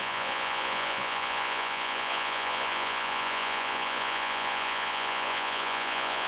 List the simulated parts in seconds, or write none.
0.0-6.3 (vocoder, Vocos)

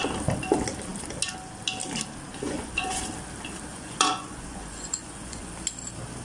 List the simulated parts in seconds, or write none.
2.3-3.0 (vocoder, Vocos); 3.7-5.5